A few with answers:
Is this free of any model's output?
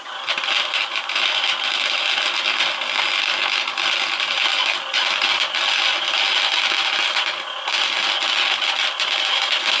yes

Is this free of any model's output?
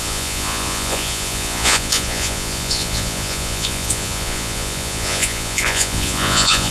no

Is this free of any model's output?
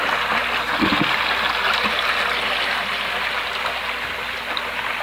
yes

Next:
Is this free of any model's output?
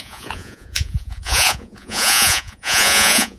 no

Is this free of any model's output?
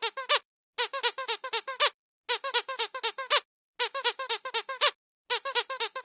yes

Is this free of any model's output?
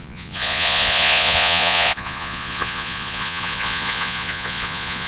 no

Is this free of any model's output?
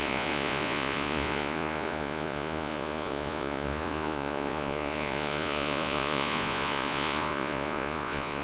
no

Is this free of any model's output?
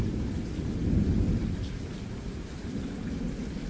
yes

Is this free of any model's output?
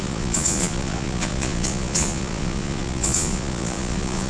no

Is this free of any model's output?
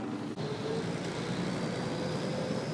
yes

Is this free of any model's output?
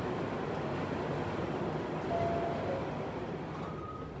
yes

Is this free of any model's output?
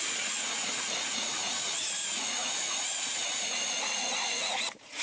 no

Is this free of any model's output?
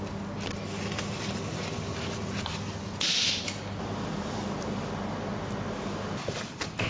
yes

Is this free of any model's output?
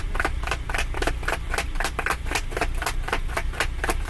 yes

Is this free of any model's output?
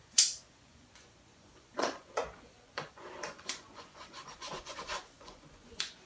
no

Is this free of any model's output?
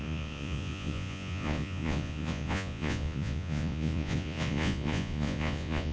no